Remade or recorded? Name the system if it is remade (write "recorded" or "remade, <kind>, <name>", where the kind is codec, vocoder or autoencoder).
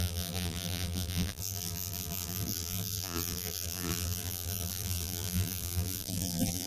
remade, vocoder, BigVGAN v2